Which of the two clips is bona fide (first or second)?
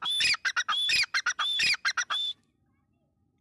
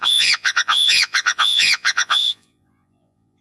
first